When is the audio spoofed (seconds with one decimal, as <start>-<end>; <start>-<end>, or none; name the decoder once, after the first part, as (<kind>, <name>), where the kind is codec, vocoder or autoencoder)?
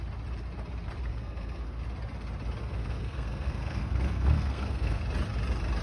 1.1-1.8 (codec, SNAC); 2.6-5.0